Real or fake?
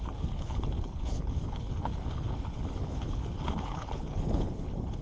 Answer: fake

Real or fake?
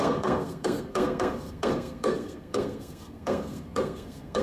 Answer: fake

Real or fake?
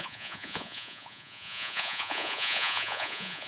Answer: fake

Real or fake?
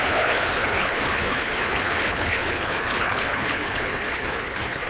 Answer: fake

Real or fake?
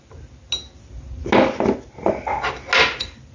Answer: real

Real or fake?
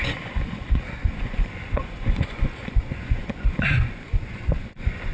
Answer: fake